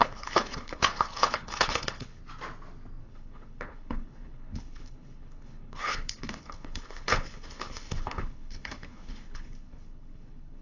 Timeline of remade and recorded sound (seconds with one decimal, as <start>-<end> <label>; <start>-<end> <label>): 0.0-2.2 remade; 2.2-3.0 recorded; 3.0-10.6 remade